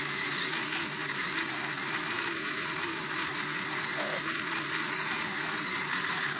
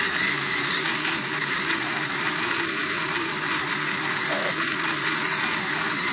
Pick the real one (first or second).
first